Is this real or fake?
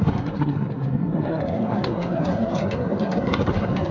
fake